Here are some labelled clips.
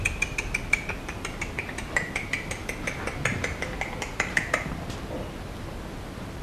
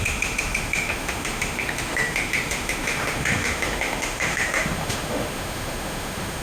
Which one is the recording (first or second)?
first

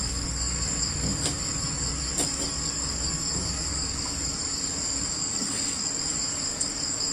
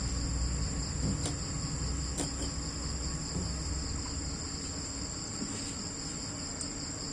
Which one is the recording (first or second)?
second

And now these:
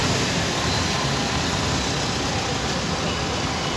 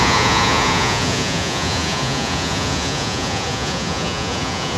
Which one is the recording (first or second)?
first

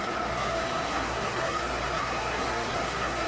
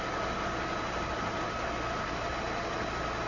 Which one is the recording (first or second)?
second